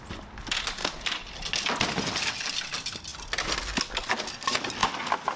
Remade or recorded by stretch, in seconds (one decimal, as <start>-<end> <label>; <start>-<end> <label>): 0.0-5.4 recorded